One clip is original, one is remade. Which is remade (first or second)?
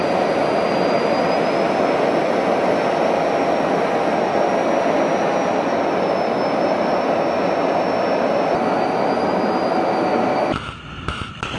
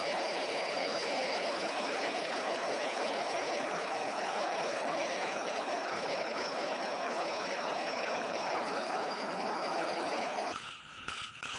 second